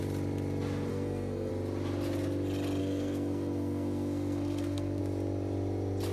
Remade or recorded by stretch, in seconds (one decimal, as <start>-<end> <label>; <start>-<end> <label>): 0.0-0.9 recorded; 0.9-1.5 remade; 1.5-2.8 recorded; 2.8-5.0 remade; 5.0-6.1 recorded